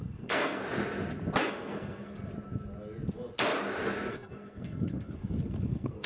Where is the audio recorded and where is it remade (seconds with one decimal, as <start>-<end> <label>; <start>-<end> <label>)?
0.0-0.6 remade; 0.6-1.4 recorded; 1.4-2.3 remade; 2.3-4.1 recorded; 4.1-6.1 remade